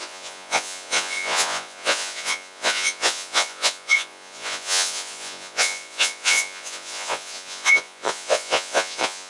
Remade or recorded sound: remade